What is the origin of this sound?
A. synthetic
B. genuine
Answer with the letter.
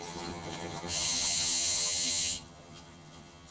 A